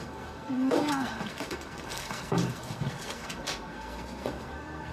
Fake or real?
fake